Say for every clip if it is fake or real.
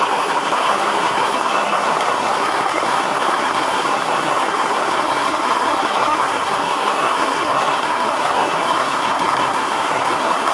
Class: fake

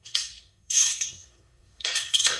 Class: fake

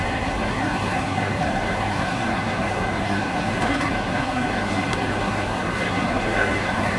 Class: fake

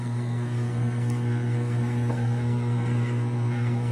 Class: fake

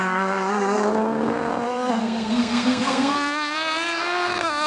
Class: fake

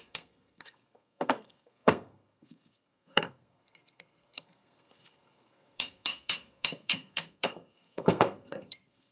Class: fake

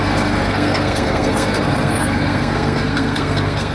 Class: fake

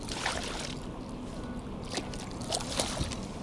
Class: real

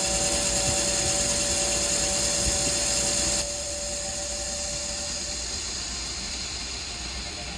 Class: real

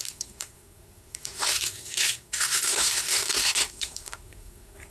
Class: fake